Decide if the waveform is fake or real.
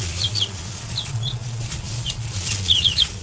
fake